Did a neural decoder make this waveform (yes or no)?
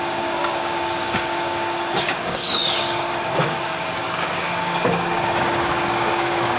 yes